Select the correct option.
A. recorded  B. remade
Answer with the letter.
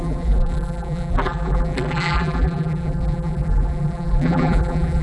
B